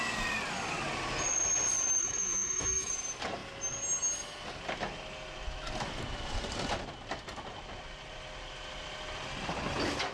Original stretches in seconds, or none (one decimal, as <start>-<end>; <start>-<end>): 0.0-2.0; 2.9-10.1